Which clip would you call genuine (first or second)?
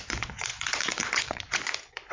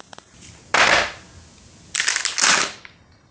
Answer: second